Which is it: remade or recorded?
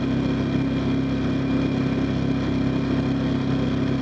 recorded